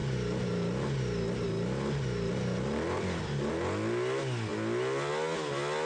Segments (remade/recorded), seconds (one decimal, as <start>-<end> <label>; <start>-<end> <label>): 0.0-5.9 recorded